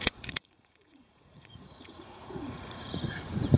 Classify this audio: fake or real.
fake